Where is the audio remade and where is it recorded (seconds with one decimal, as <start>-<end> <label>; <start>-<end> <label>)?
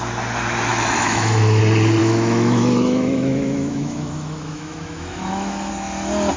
0.0-0.7 recorded; 0.7-1.6 remade; 1.6-2.0 recorded; 2.0-5.7 remade; 5.7-6.4 recorded